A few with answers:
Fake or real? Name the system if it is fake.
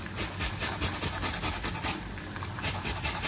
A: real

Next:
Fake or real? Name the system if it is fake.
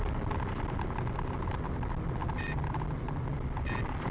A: real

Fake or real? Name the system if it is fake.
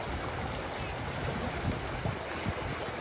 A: real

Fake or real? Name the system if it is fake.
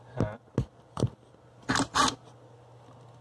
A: real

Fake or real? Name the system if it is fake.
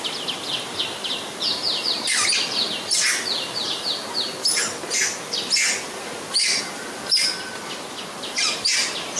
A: real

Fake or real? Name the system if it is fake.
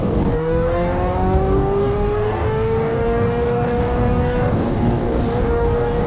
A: fake, codec, DAC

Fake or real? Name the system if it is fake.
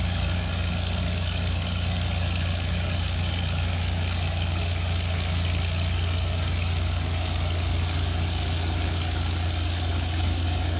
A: fake, codec, DAC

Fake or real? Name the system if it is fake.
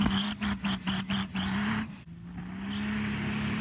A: real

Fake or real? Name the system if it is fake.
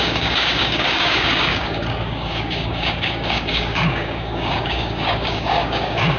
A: fake, codec, DAC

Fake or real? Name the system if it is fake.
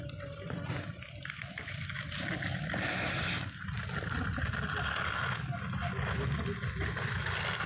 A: real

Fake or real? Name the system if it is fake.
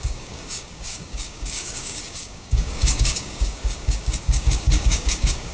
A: fake, codec, DAC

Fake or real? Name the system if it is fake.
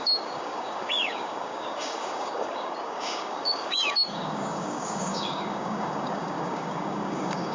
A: fake, codec, DAC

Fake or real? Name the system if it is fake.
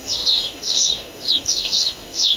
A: fake, codec, DAC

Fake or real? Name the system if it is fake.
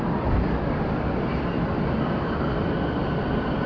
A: real